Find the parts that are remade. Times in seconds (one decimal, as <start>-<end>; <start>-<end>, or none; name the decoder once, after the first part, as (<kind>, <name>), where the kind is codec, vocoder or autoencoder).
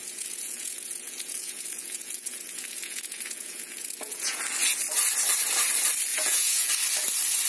0.0-4.4 (vocoder, Vocos); 6.1-6.7